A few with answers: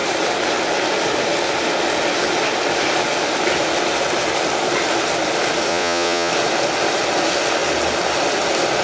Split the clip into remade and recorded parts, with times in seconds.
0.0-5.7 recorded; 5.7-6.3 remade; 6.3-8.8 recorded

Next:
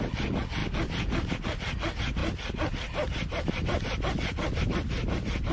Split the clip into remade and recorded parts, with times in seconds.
0.0-5.5 recorded

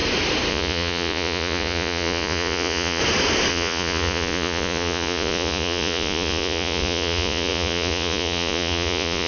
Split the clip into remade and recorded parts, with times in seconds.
0.0-0.5 recorded; 0.5-3.0 remade; 3.0-3.5 recorded; 3.5-9.3 remade

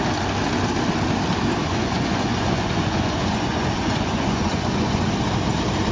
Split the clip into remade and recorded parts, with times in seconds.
0.0-1.6 recorded; 1.6-5.1 remade; 5.1-5.9 recorded

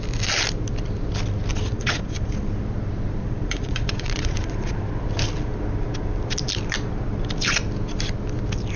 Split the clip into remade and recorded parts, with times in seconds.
0.0-1.5 recorded; 1.5-2.4 remade; 2.4-3.2 recorded; 3.2-4.7 remade; 4.7-8.8 recorded

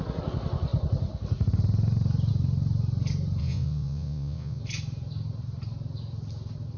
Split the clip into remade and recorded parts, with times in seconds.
0.0-3.4 recorded; 3.4-4.6 remade; 4.6-6.8 recorded

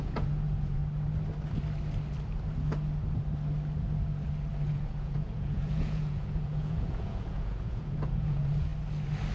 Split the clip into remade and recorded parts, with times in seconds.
0.0-0.8 remade; 0.8-4.7 recorded; 4.7-8.7 remade; 8.7-9.3 recorded

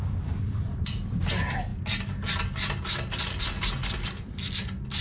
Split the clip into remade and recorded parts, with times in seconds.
0.0-5.0 recorded